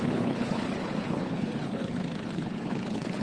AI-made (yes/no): yes